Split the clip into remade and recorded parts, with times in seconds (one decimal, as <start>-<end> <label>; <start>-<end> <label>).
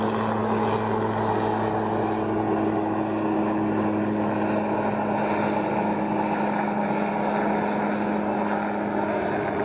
0.0-9.6 recorded